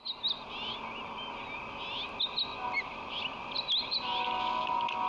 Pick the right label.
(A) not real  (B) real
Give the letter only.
B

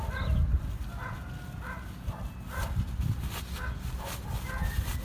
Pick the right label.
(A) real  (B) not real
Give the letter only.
A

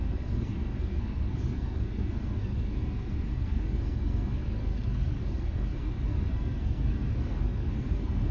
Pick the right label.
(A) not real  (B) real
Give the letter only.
A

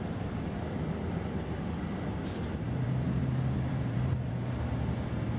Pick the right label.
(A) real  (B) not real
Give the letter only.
B